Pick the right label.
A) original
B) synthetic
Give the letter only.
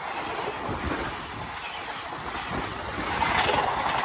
A